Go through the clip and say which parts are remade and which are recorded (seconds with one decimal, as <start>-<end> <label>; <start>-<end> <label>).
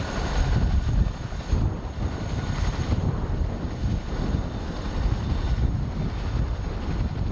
0.0-7.3 recorded